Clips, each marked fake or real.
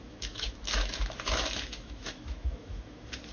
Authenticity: fake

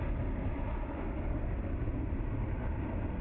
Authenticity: real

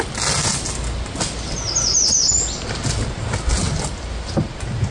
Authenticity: real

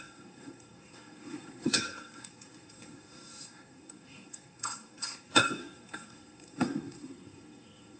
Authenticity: fake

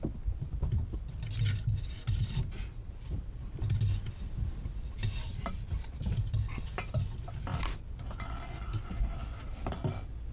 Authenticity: real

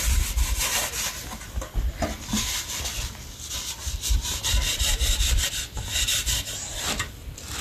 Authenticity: real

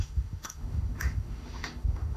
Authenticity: fake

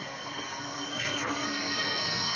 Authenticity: fake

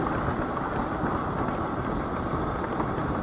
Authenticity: real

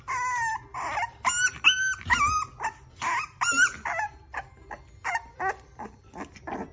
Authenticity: real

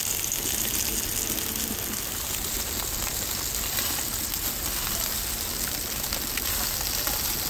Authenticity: real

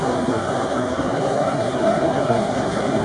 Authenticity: fake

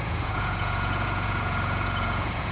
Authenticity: fake